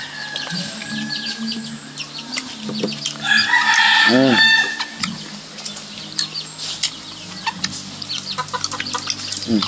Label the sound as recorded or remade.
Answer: recorded